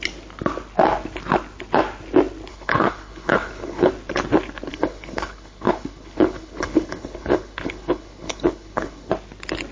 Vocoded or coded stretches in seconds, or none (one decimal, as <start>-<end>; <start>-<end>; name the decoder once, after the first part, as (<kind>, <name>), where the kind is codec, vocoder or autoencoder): 2.5-3.9 (codec, HILCodec); 4.7-9.1